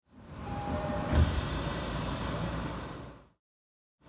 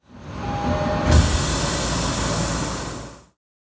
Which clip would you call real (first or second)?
second